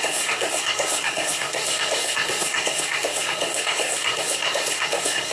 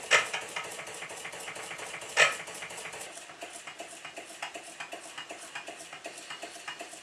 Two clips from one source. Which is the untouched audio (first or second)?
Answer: second